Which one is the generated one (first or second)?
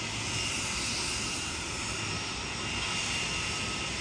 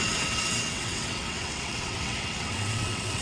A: second